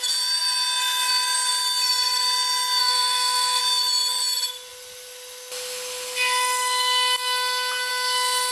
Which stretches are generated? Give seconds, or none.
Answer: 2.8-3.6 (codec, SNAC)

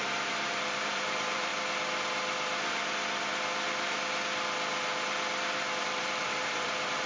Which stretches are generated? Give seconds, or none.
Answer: 0.0-1.5 (vocoder, BigVGAN v2); 5.8-7.1

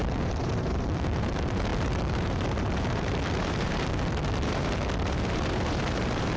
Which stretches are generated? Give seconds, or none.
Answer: 0.0-6.4 (vocoder, BigVGAN v2)

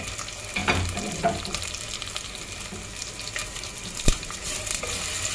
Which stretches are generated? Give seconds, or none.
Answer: 0.6-1.8 (vocoder, BigVGAN v2); 3.4-4.8

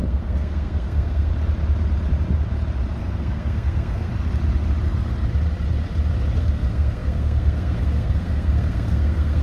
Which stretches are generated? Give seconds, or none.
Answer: 0.0-1.3 (codec, SNAC); 3.0-4.1; 6.4-9.4